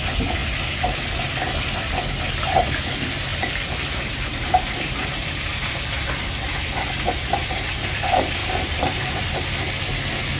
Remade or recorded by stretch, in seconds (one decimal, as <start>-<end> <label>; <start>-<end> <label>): 0.0-3.3 recorded; 3.3-6.0 remade; 6.0-8.4 recorded; 8.4-9.2 remade; 9.2-10.4 recorded

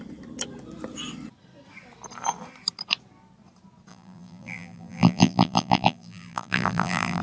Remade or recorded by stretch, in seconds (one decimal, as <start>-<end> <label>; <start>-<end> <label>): 0.0-3.9 recorded; 3.9-7.2 remade

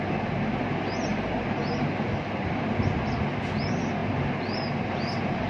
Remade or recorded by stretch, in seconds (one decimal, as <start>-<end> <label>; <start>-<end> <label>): 0.0-1.1 recorded; 1.1-2.6 remade; 2.6-5.5 recorded

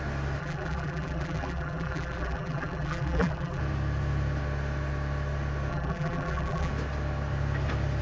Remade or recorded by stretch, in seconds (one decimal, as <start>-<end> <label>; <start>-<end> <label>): 0.0-0.4 recorded; 0.4-3.6 remade; 3.6-5.7 recorded; 5.7-6.7 remade; 6.7-8.0 recorded

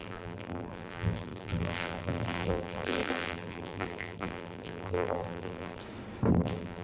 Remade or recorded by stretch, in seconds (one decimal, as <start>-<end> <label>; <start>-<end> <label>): 0.0-5.8 remade; 5.8-6.3 recorded; 6.3-6.8 remade

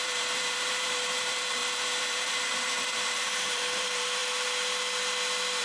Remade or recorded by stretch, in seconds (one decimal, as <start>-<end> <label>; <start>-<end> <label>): 0.0-4.2 remade; 4.2-5.6 recorded

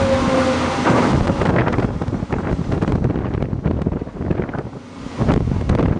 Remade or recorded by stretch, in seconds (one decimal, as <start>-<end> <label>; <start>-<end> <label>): 0.0-6.0 recorded